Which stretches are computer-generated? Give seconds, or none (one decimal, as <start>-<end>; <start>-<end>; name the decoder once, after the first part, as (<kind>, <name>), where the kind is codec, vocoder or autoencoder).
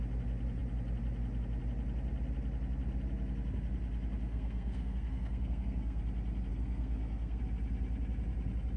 4.3-6.0 (codec, SNAC); 6.5-7.4